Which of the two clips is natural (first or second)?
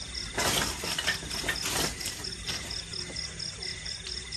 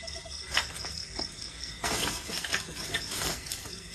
first